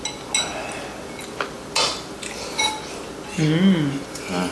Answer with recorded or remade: recorded